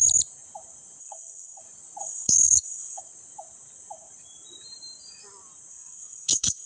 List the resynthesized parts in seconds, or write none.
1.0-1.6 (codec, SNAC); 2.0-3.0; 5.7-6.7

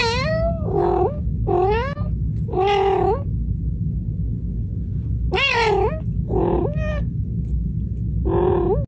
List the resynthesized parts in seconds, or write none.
0.0-1.1 (codec, DAC)

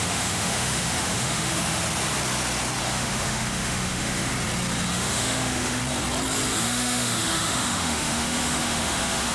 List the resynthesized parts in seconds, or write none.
0.0-1.8 (autoencoder, DAC-VAE); 2.8-4.3; 4.9-5.8; 6.6-9.3

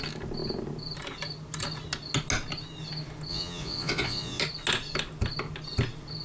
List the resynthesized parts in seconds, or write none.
3.3-4.4 (vocoder, Vocos)

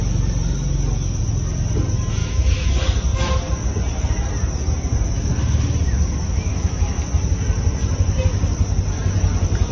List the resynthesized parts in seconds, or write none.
2.2-2.7 (autoencoder, DAC-VAE); 6.5-7.0

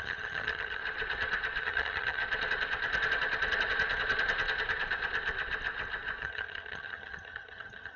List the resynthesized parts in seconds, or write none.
0.0-0.8 (vocoder, HiFi-GAN); 1.6-2.2; 6.2-8.0

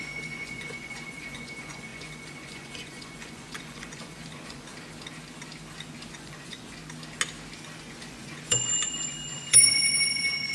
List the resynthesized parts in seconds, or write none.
0.0-4.7 (vocoder, Vocos); 6.1-6.8; 7.8-10.5

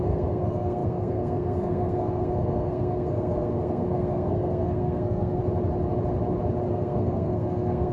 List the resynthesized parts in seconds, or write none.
0.0-5.4 (codec, SNAC); 6.7-7.9